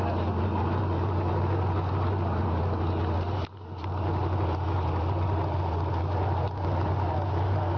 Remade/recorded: recorded